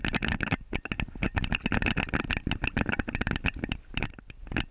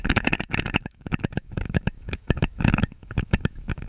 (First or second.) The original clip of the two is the first